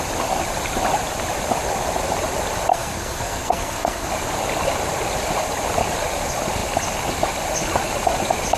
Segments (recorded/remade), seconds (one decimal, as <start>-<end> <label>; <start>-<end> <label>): 0.0-2.7 recorded; 2.7-4.1 remade; 4.1-8.6 recorded